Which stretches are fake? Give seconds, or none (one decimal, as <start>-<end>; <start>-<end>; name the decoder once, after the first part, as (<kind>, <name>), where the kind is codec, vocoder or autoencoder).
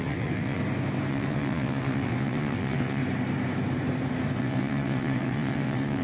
0.0-0.6 (vocoder, WaveNeXt); 1.1-3.0; 4.4-6.0